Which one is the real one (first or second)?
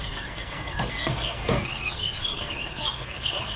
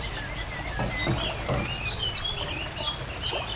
second